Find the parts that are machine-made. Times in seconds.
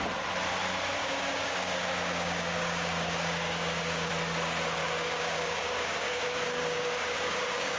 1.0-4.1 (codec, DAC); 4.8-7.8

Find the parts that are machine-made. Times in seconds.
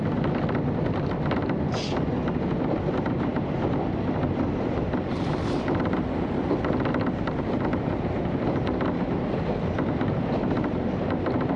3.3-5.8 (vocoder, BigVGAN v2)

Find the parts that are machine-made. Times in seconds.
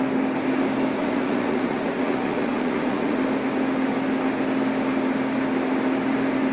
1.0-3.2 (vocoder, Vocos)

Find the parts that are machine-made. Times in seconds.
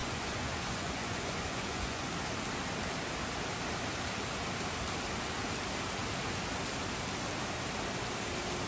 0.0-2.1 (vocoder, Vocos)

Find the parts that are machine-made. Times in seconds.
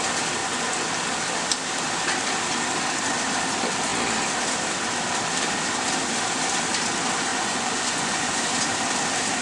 0.4-0.9 (vocoder, Vocos); 7.3-8.4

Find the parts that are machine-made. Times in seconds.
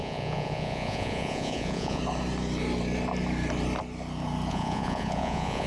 0.0-2.0 (vocoder, Vocos); 4.5-5.7